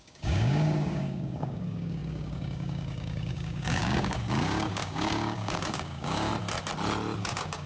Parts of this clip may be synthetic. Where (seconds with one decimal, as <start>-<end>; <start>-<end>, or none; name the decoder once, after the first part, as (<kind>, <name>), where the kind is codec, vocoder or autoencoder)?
0.0-6.3 (codec, DAC); 7.2-7.7